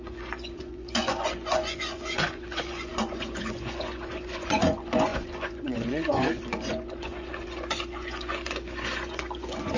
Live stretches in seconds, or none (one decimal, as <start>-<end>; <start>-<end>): none